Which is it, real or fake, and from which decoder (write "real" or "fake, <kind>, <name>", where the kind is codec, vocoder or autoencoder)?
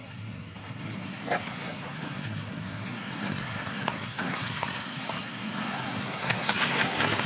fake, codec, SNAC